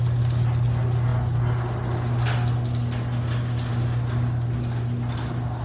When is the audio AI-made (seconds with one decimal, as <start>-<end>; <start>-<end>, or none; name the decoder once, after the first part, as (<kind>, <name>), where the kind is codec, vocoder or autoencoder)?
none